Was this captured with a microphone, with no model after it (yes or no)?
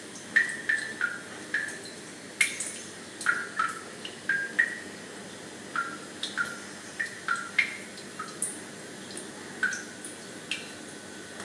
yes